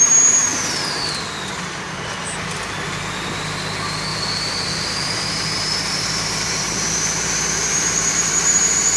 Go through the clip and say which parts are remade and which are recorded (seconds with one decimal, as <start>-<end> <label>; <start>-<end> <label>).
0.0-4.1 recorded; 4.1-8.3 remade; 8.3-9.0 recorded